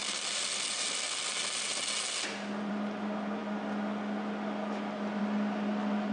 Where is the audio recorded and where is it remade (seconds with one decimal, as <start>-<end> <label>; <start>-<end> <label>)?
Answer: 0.0-6.1 recorded

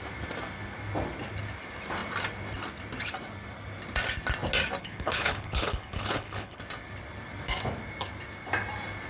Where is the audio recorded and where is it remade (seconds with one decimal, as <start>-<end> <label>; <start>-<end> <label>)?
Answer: 0.0-4.8 recorded; 4.8-6.6 remade; 6.6-9.1 recorded

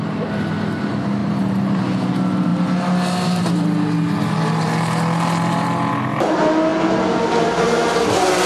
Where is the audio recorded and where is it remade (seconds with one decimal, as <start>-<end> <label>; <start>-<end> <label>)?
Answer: 0.0-1.2 recorded; 1.2-1.8 remade; 1.8-8.5 recorded